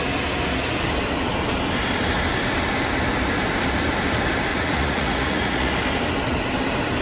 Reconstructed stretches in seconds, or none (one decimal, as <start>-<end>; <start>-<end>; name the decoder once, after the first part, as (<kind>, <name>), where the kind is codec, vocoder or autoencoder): 4.5-5.7 (vocoder, Vocos)